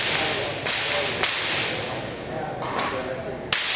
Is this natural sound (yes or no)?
yes